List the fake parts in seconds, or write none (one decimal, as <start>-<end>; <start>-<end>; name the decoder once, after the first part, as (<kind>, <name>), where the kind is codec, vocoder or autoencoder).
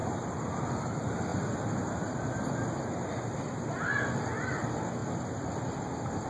none